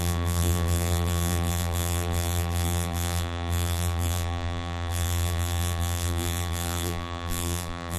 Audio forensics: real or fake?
fake